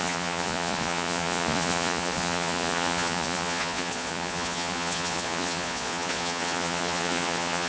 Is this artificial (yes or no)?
yes